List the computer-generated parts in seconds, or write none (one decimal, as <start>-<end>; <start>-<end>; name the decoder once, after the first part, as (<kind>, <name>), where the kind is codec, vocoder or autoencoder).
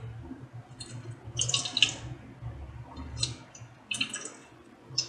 4.4-5.1 (vocoder, Vocos)